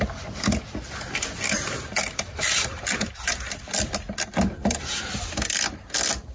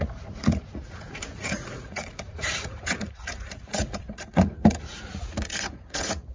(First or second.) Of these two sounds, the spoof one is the second